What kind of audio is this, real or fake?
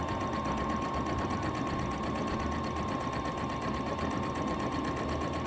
real